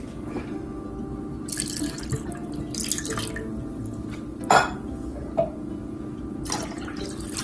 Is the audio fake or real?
real